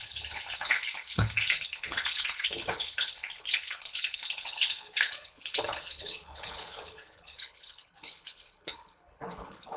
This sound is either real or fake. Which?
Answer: fake